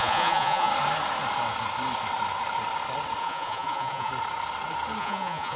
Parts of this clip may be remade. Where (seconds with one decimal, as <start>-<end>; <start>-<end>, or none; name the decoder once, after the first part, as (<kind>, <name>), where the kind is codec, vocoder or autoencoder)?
0.0-0.7 (vocoder, Vocos); 3.2-4.1; 5.0-5.6